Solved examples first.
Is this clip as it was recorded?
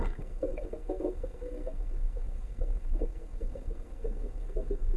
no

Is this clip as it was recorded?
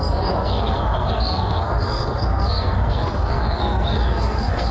no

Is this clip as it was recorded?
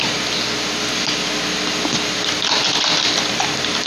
yes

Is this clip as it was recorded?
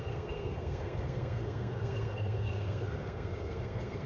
no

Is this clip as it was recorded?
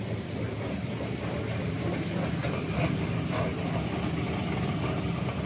yes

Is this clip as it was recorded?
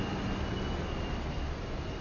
yes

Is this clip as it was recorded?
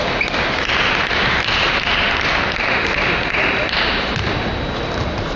yes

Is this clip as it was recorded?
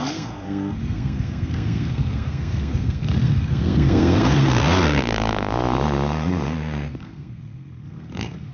no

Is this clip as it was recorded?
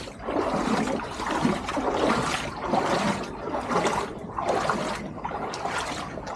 yes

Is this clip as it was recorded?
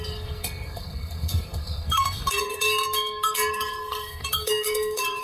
no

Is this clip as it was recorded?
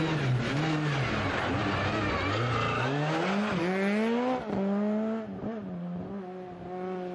yes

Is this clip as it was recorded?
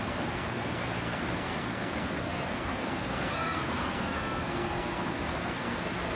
no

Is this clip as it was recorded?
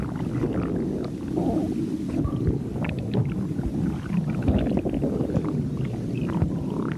yes